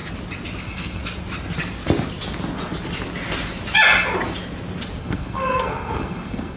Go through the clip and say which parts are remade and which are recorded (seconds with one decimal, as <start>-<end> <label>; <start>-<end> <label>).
0.0-0.6 recorded; 0.6-1.0 remade; 1.0-5.0 recorded; 5.0-6.6 remade